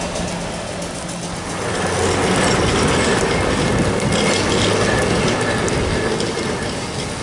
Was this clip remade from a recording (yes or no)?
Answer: no